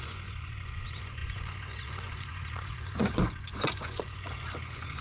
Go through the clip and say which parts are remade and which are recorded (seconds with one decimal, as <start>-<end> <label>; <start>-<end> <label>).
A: 0.0-5.0 remade

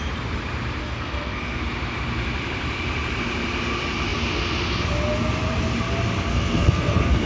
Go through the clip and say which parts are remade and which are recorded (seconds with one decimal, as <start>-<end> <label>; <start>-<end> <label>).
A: 0.0-0.8 recorded; 0.8-1.6 remade; 1.6-6.3 recorded; 6.3-7.3 remade

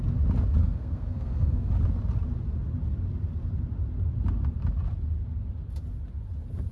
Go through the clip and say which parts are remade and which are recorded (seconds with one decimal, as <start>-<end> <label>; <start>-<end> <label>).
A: 0.0-0.6 recorded; 0.6-1.7 remade; 1.7-6.7 recorded

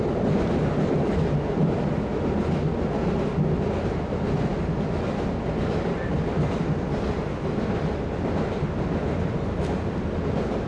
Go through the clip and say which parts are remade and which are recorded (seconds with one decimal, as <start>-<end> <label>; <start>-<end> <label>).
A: 0.0-10.7 recorded

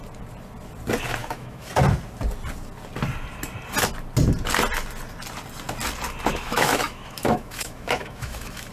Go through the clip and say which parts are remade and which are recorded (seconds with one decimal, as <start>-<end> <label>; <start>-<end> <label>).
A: 0.0-1.2 recorded; 1.2-1.7 remade; 1.7-6.3 recorded; 6.3-8.7 remade

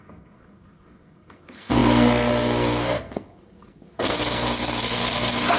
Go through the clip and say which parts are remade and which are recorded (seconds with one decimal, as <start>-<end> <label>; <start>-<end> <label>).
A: 0.0-5.6 remade

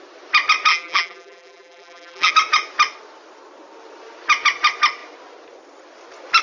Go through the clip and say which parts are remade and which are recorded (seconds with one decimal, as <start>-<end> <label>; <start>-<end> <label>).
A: 0.0-0.7 recorded; 0.7-2.3 remade; 2.3-6.4 recorded